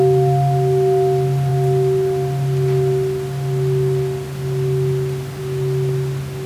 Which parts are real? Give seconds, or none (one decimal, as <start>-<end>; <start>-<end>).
0.0-6.5